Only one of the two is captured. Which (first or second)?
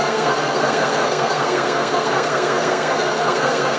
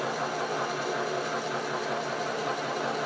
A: second